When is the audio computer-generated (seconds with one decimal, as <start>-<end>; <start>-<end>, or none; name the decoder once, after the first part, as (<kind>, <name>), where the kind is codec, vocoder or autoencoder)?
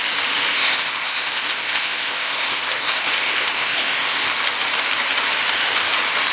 0.5-4.3 (codec, ZipCodec)